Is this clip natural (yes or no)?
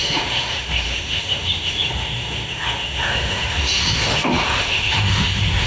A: no